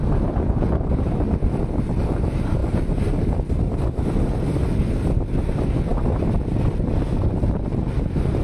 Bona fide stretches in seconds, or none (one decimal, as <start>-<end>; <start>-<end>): 0.0-8.4

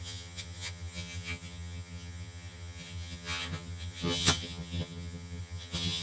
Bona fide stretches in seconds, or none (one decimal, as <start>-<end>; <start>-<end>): none

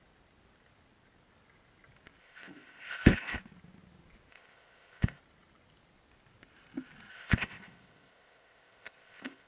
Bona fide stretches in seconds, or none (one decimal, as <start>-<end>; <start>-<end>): 0.0-2.2; 3.4-4.3; 5.2-7.1

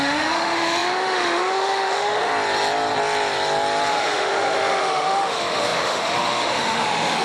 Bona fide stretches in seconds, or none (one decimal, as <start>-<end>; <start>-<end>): 2.3-3.9

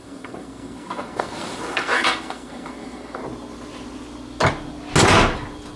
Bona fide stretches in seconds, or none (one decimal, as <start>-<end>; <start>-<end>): 3.2-5.8

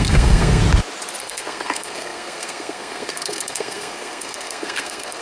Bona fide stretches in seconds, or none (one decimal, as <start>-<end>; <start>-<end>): 0.6-1.2

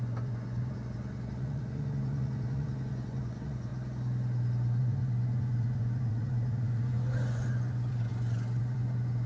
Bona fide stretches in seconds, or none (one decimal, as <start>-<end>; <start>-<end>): 3.7-4.8